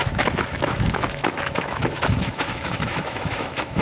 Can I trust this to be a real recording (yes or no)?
no